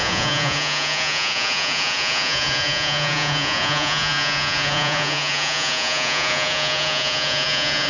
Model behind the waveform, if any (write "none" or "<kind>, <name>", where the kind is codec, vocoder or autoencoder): vocoder, Vocos